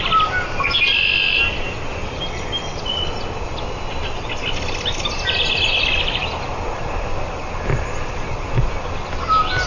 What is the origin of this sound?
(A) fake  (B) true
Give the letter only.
B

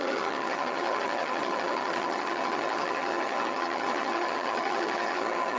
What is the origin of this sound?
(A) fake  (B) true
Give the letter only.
A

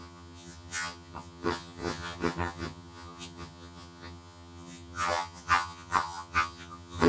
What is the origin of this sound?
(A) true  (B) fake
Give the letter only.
B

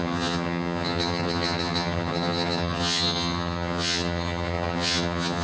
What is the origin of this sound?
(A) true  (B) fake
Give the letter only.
B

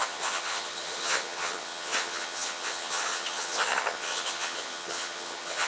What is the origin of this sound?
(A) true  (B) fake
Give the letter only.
B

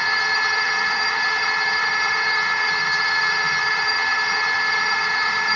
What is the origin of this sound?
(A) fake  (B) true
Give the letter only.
A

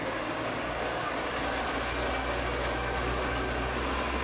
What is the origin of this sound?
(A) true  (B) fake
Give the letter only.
A